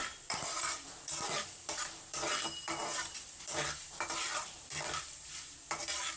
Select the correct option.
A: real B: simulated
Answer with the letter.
B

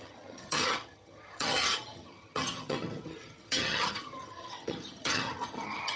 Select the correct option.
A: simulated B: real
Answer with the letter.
A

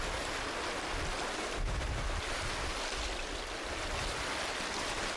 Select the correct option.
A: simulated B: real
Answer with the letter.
B